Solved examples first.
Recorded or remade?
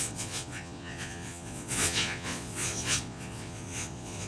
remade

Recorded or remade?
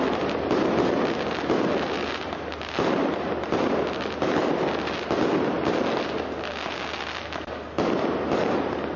recorded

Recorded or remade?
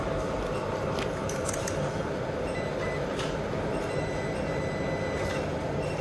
recorded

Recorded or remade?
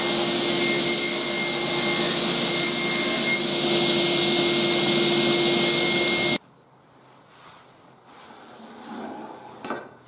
recorded